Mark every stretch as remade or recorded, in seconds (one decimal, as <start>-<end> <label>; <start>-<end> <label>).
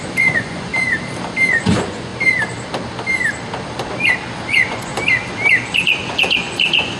0.0-0.7 remade; 0.7-1.5 recorded; 1.5-2.1 remade; 2.1-4.5 recorded; 4.5-4.9 remade; 4.9-5.7 recorded; 5.7-7.0 remade